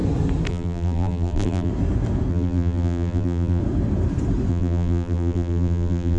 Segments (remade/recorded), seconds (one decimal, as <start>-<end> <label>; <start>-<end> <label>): 0.0-0.5 recorded; 0.5-1.7 remade; 1.7-2.3 recorded; 2.3-3.6 remade; 3.6-4.5 recorded; 4.5-6.2 remade